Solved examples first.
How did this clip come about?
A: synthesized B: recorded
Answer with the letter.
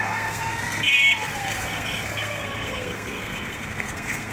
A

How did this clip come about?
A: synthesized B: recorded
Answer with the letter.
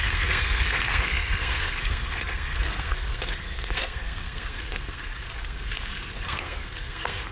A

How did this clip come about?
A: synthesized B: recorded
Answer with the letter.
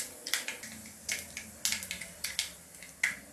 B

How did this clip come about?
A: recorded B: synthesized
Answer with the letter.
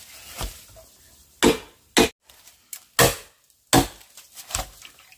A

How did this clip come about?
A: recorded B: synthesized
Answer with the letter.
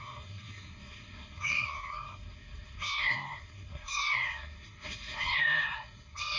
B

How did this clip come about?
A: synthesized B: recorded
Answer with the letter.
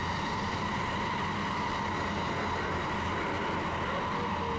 B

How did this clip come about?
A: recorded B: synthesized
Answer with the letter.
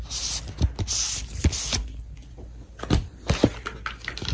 A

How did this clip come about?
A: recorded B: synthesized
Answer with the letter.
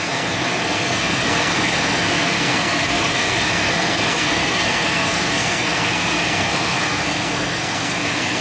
B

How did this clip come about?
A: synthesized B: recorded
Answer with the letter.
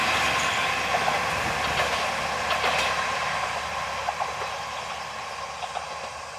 B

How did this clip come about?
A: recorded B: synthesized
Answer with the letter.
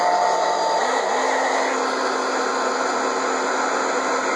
A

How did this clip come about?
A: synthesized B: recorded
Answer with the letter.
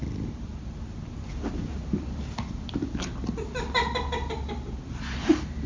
B